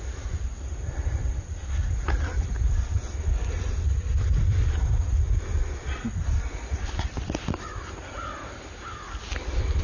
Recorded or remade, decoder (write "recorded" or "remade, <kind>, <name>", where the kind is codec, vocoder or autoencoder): recorded